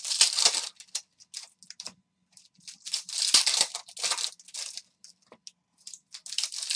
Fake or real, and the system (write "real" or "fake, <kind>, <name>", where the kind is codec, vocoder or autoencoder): real